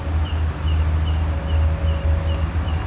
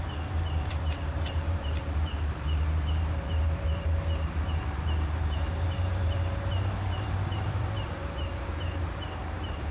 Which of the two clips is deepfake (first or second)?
second